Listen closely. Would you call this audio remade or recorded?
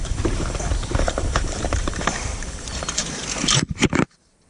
remade